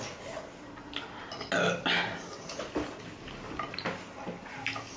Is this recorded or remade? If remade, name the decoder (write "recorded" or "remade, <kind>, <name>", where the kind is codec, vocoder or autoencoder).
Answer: recorded